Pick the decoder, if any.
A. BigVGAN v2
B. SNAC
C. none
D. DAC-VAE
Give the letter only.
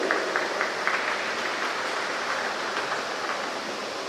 C